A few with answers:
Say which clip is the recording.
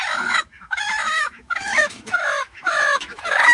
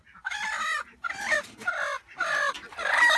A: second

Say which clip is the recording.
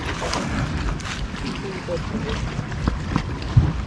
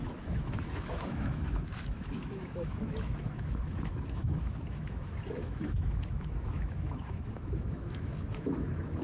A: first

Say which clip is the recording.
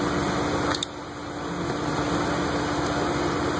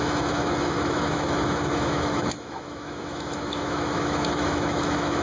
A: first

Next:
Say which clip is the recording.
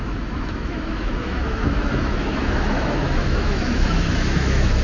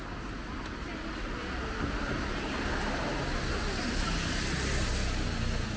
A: second